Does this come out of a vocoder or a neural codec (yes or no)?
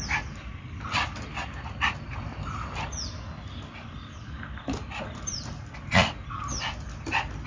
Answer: no